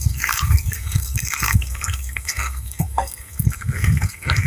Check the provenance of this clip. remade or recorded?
remade